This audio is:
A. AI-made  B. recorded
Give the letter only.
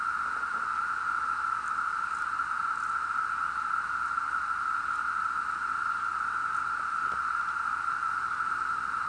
A